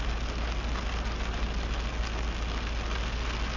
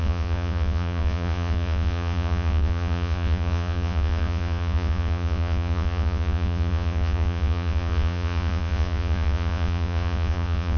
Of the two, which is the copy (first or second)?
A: second